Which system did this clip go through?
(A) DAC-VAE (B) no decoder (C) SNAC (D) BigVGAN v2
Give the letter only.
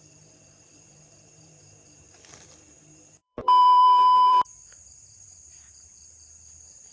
D